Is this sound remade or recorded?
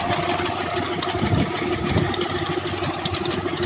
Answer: recorded